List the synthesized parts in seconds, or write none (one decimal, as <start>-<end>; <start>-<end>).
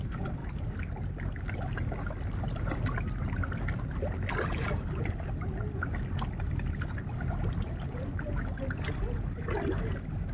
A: none